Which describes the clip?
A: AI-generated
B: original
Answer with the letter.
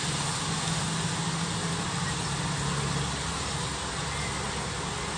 B